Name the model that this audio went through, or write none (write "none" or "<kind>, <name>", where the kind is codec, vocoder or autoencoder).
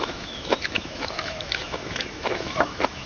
autoencoder, DAC-VAE